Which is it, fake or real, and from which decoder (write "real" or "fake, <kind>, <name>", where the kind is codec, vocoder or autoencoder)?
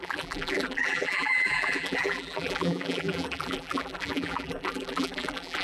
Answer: fake, vocoder, BigVGAN v2